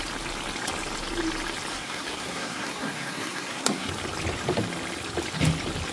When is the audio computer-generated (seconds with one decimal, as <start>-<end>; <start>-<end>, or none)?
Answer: 1.7-3.9